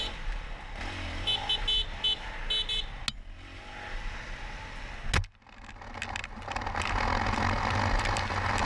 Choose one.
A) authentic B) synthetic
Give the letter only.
A